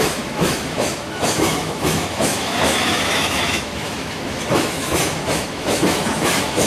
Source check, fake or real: fake